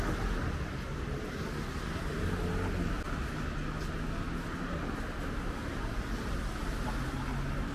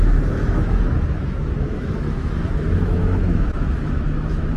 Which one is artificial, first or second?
second